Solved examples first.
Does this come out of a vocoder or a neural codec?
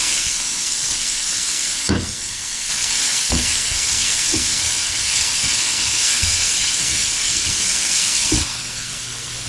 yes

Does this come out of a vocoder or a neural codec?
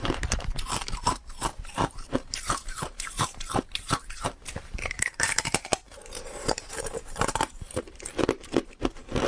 yes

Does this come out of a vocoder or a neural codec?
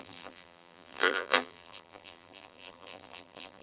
yes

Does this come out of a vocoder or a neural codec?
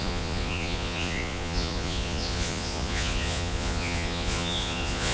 yes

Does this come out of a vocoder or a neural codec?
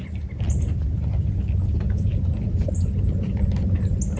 no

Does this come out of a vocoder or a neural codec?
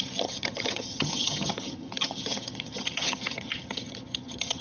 yes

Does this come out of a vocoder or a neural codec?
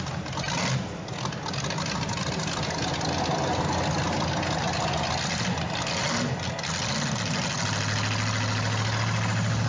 no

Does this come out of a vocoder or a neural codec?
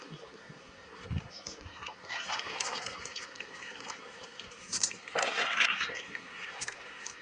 yes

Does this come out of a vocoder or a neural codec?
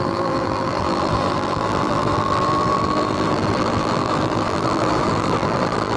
yes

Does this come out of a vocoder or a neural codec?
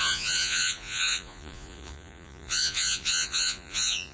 yes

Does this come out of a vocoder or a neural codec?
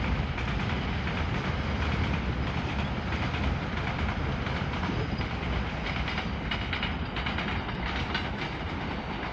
no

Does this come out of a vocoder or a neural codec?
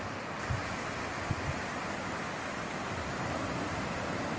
no